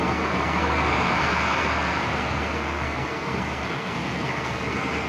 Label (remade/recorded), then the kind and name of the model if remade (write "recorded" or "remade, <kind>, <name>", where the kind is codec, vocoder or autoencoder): remade, codec, SNAC